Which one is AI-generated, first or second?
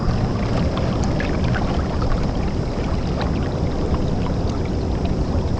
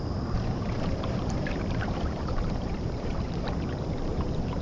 second